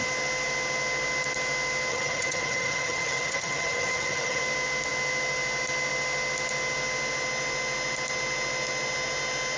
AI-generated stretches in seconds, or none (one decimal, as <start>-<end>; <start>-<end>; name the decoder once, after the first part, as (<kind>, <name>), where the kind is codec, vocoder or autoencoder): 1.9-4.4 (vocoder, HiFi-GAN)